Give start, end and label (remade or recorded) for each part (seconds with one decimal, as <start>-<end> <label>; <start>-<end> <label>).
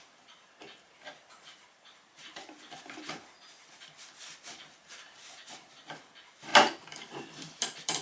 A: 0.0-8.0 remade